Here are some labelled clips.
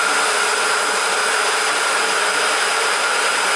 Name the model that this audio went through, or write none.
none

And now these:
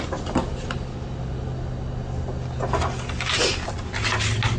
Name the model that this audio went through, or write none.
none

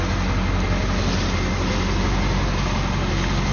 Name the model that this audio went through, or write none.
none